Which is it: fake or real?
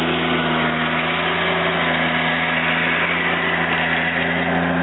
real